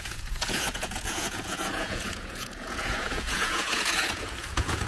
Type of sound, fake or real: fake